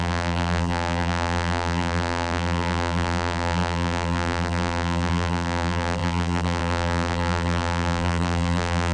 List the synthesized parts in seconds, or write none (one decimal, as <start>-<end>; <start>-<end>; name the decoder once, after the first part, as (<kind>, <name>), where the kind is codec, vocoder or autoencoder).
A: 0.0-8.9 (vocoder, BigVGAN v2)